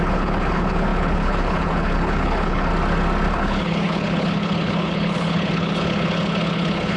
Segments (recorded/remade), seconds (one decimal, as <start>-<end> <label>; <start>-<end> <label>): 0.0-2.7 remade; 2.7-3.3 recorded; 3.3-7.0 remade